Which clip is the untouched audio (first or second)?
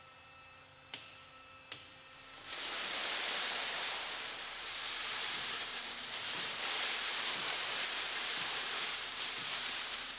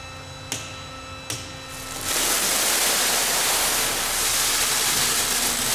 second